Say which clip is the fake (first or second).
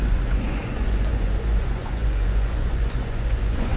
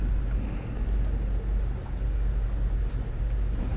first